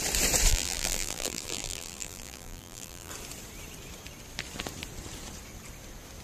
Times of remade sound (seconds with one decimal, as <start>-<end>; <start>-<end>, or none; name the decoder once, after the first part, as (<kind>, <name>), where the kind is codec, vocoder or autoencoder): 0.5-3.1 (vocoder, BigVGAN v2)